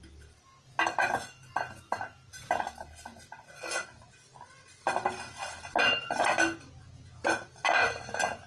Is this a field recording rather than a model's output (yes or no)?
yes